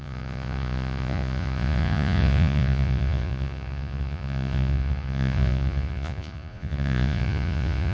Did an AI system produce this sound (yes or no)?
yes